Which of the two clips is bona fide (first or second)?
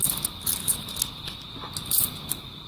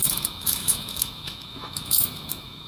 first